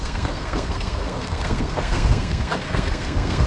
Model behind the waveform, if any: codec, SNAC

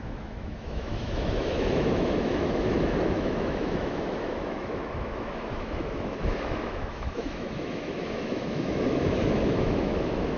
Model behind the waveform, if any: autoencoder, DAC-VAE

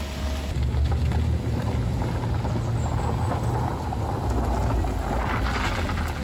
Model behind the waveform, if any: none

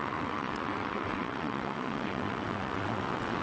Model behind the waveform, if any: vocoder, WaveNeXt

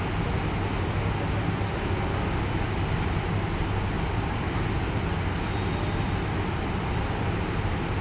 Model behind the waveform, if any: none